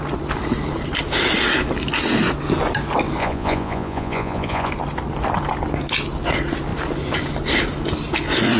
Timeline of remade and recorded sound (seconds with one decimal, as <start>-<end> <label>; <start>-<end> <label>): 0.0-3.2 recorded; 3.2-4.7 remade; 4.7-8.6 recorded